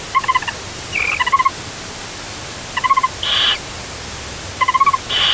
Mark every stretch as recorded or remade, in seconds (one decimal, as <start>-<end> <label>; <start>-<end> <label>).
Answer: 0.0-5.3 recorded